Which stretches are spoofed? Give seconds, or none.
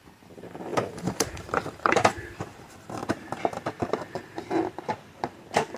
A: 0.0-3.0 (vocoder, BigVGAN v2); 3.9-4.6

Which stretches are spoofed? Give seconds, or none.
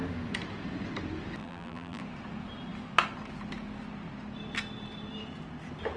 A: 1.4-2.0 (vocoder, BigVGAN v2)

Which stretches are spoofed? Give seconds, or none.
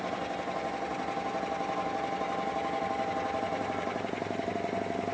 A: 3.5-4.5 (vocoder, BigVGAN v2)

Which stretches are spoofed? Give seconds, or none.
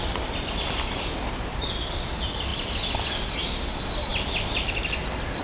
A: 2.5-3.3 (vocoder, BigVGAN v2); 4.1-5.4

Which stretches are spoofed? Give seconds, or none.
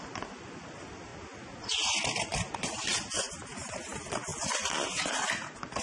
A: 0.0-1.1 (vocoder, BigVGAN v2); 2.2-4.3; 4.9-5.8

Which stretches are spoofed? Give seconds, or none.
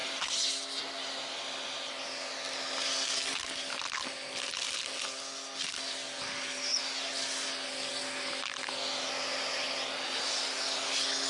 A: none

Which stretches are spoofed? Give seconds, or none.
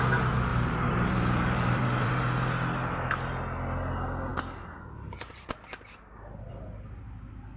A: 0.5-2.1 (vocoder, BigVGAN v2)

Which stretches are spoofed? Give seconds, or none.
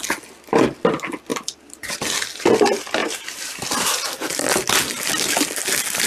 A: 1.3-1.9 (vocoder, BigVGAN v2); 3.0-3.6